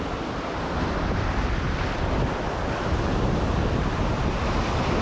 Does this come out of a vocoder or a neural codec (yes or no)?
no